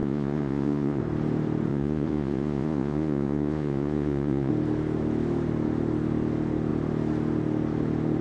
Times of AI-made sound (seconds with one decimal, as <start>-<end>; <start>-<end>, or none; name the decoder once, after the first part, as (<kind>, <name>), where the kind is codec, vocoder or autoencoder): 0.0-1.0 (vocoder, Vocos); 1.7-4.5